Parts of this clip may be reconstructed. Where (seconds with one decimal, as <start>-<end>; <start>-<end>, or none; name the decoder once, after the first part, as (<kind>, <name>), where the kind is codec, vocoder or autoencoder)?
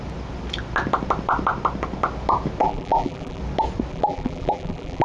2.6-3.4 (vocoder, BigVGAN v2); 3.9-5.0